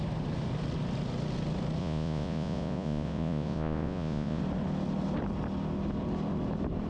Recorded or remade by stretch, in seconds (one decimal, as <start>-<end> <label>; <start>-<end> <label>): 0.0-1.8 recorded; 1.8-4.4 remade; 4.4-6.9 recorded